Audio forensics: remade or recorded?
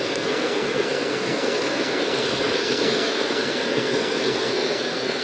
remade